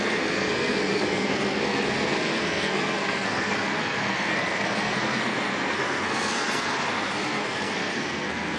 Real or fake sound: fake